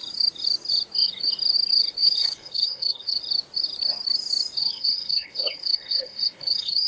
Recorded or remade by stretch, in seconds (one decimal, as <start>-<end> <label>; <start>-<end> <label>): 0.0-2.0 recorded; 2.0-3.2 remade; 3.2-4.6 recorded; 4.6-6.9 remade